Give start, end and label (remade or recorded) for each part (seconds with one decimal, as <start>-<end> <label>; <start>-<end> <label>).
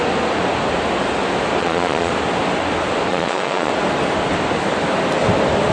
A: 0.0-1.6 recorded; 1.6-2.1 remade; 2.1-3.1 recorded; 3.1-3.7 remade; 3.7-5.7 recorded